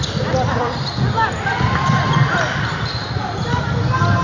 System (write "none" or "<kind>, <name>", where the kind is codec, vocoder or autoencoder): none